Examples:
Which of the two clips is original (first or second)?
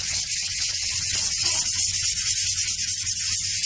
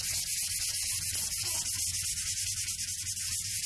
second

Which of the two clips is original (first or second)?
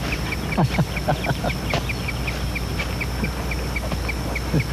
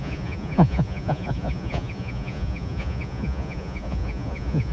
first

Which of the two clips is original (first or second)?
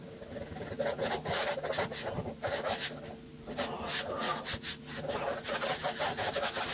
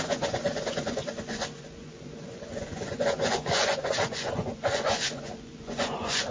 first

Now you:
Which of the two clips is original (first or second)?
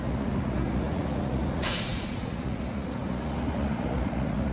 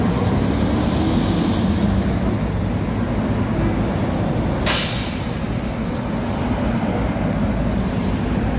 second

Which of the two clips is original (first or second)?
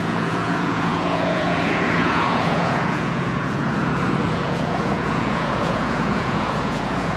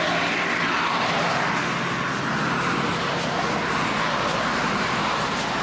second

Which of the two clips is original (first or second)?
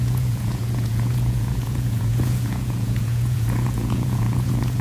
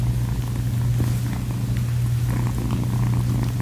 second